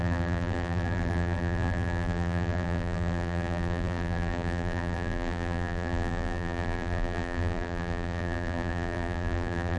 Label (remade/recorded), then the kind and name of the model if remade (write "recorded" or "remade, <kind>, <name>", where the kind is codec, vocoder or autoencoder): remade, vocoder, BigVGAN v2